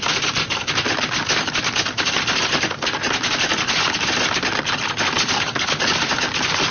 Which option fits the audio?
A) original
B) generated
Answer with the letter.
A